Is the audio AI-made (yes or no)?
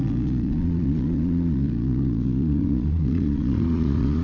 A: yes